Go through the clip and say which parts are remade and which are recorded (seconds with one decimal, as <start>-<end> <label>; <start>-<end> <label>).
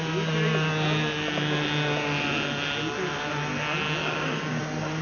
0.0-4.0 recorded; 4.0-4.6 remade; 4.6-5.0 recorded